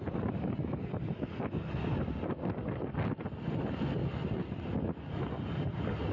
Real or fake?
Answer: real